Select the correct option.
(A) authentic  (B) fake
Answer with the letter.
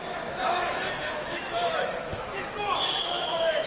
B